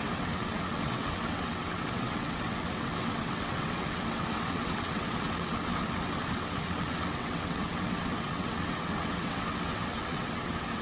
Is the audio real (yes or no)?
no